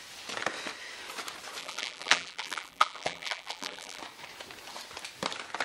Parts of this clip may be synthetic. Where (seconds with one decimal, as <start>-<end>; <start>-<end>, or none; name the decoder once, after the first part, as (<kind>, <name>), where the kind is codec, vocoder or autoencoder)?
1.6-4.0 (vocoder, BigVGAN v2)